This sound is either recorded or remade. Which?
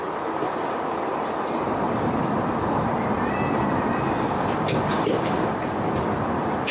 remade